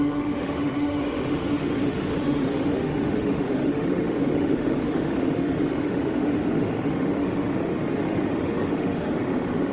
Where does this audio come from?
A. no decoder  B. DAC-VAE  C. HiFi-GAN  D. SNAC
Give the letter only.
B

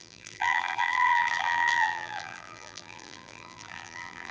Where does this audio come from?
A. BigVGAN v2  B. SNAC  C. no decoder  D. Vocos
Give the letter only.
A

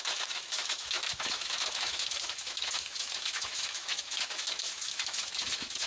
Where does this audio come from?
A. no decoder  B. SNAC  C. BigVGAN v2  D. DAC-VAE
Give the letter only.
D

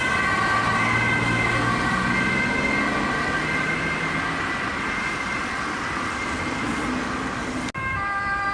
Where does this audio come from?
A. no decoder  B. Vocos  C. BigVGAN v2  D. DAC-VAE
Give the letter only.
A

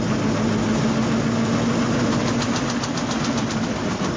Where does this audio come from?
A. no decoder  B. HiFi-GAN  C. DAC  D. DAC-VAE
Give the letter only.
A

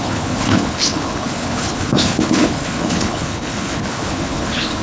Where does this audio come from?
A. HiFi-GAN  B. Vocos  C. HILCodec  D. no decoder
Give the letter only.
C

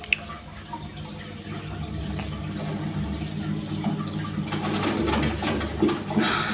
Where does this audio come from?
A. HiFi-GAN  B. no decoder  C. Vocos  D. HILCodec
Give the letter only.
B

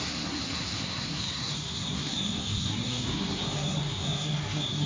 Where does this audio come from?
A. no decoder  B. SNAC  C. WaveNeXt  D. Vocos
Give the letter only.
B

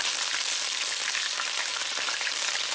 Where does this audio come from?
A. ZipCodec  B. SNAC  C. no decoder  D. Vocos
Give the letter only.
C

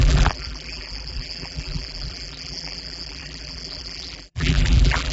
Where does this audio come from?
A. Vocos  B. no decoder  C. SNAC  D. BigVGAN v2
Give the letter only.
D